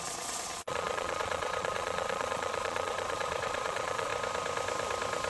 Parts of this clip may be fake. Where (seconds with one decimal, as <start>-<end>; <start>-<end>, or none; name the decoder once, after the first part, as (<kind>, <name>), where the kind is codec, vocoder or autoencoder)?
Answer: 0.0-4.1 (vocoder, Vocos)